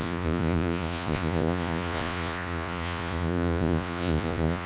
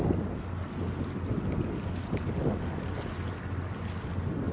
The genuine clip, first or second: second